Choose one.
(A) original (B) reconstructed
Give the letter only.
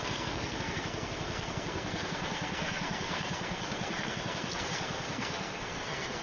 B